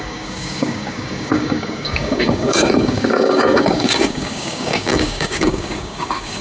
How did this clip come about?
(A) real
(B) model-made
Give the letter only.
B